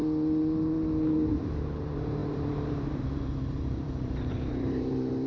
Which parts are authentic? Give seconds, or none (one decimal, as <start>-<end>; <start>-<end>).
0.0-1.3